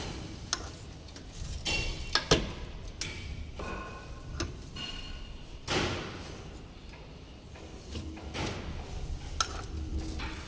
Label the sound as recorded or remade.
recorded